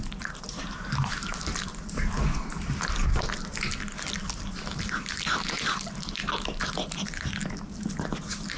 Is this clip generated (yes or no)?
no